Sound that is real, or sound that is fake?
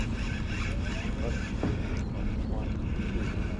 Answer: real